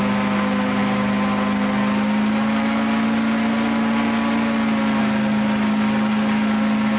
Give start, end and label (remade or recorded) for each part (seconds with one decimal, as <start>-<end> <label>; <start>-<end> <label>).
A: 0.0-7.0 recorded